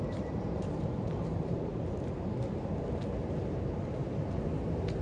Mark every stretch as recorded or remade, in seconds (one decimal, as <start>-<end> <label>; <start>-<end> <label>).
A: 0.0-1.7 remade; 1.7-5.0 recorded